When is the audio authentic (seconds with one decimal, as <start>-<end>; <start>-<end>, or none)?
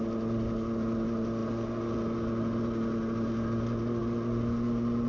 0.0-5.1